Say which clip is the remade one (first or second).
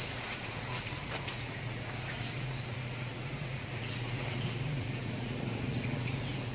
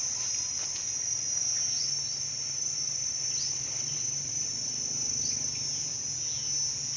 first